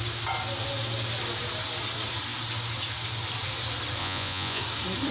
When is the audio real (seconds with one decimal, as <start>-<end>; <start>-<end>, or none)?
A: 0.0-4.0; 4.6-5.1